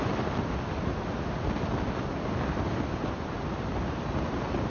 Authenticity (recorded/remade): recorded